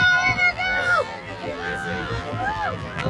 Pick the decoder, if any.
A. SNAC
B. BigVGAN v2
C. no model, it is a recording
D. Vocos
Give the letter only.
B